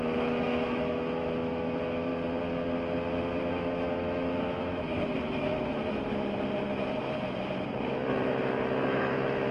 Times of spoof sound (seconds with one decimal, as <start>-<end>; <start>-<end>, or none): 0.0-2.1; 3.5-6.0; 8.1-9.5